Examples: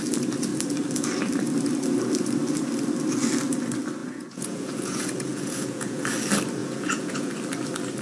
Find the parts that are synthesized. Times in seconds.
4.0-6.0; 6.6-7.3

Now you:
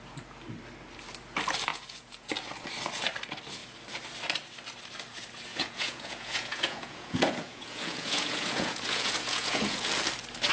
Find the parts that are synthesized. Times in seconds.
1.7-2.3; 5.5-9.9

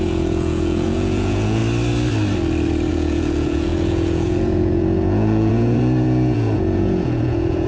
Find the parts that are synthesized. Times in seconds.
0.0-1.6; 2.9-7.7

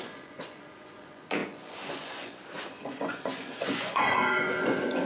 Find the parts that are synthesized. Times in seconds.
0.0-5.1